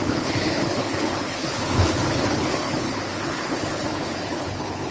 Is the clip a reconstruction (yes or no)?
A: yes